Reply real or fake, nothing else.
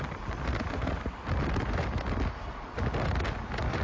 real